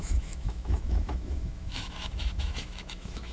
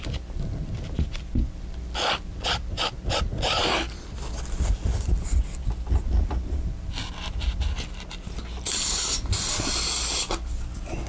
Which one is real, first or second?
second